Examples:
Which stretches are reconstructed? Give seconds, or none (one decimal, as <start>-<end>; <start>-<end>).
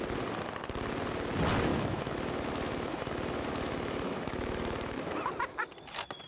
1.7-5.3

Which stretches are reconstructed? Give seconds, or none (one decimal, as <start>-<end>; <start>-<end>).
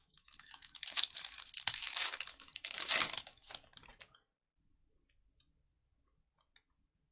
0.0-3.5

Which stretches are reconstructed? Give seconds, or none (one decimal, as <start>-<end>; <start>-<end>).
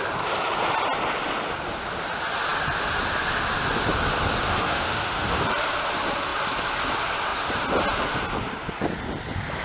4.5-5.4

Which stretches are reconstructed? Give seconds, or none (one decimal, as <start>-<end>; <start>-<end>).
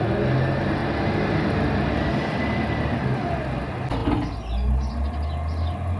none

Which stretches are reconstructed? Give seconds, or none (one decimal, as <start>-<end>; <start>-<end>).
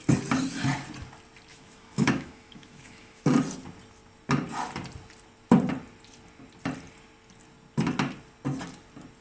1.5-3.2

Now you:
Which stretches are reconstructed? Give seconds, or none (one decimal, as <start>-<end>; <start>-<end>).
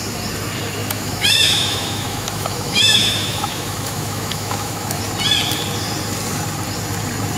0.8-5.0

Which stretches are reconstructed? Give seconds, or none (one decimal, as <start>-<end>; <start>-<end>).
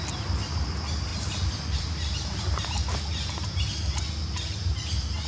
none